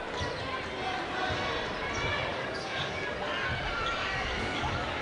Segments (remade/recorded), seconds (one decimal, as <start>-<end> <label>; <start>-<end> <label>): 0.0-2.3 recorded; 2.3-3.0 remade; 3.0-4.0 recorded; 4.0-5.0 remade